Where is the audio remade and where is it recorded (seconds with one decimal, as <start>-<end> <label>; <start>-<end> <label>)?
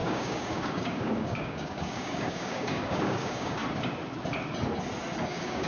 0.0-3.6 remade; 3.6-5.3 recorded; 5.3-5.7 remade